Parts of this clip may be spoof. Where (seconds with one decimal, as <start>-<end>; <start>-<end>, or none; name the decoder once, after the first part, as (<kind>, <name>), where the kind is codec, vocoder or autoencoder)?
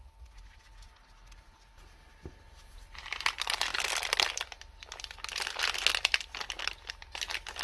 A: none